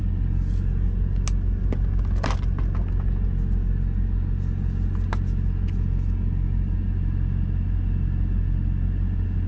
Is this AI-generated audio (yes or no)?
no